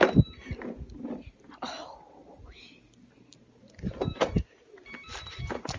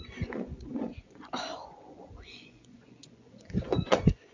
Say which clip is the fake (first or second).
second